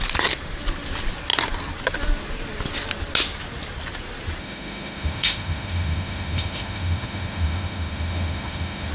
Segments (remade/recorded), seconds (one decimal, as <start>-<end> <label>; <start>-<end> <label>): 0.0-4.4 recorded; 4.4-8.9 remade